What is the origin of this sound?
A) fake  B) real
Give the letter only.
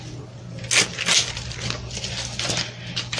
B